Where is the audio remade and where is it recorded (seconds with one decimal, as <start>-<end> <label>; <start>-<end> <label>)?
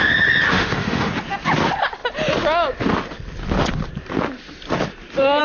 0.0-0.5 recorded; 0.5-1.1 remade; 1.1-5.4 recorded